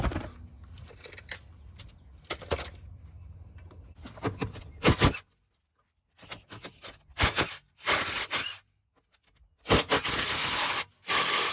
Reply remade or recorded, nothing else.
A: recorded